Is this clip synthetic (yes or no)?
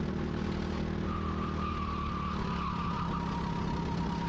no